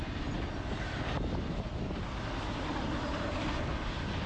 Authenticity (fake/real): real